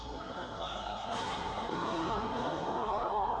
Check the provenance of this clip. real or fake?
fake